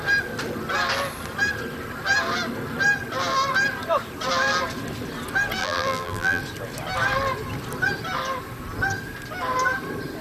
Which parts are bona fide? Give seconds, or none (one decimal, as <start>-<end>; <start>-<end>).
0.0-5.6; 6.4-10.2